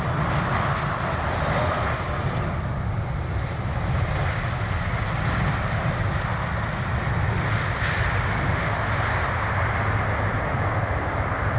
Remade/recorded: recorded